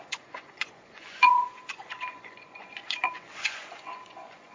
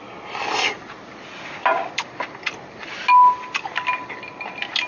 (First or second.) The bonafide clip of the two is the second